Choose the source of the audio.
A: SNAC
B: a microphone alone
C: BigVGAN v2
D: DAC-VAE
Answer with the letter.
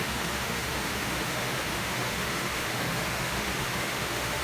D